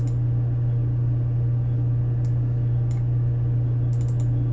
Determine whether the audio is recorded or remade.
recorded